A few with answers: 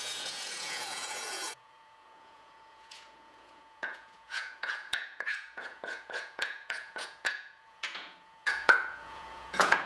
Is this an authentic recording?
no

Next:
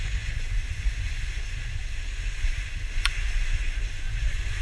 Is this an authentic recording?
no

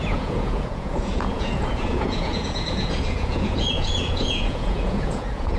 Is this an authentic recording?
no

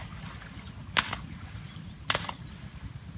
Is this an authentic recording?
yes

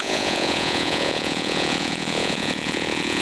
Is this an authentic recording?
no